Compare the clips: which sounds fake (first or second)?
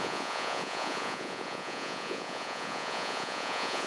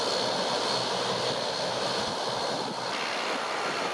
first